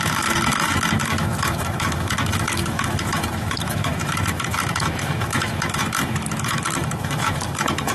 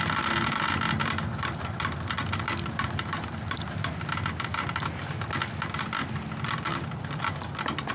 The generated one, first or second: first